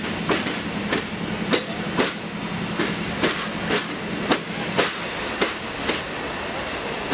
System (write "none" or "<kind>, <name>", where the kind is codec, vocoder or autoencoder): none